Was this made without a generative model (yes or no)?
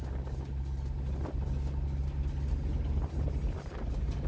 yes